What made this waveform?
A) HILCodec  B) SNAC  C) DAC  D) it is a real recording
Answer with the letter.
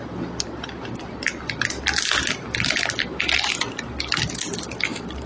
D